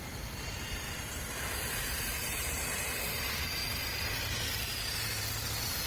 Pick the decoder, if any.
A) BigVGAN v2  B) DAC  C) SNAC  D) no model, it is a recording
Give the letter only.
A